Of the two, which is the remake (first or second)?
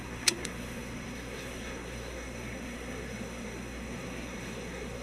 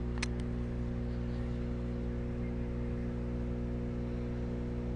first